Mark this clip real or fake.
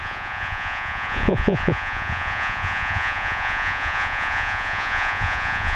fake